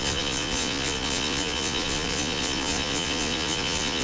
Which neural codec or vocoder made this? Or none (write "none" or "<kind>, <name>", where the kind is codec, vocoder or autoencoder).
vocoder, Vocos